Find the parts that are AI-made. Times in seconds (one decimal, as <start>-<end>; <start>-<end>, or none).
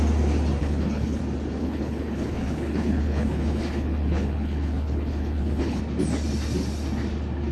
0.6-1.2; 1.6-5.8